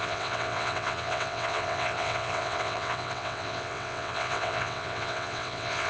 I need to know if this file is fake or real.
fake